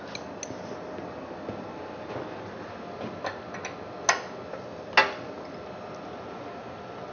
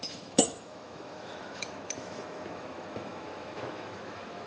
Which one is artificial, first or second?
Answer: second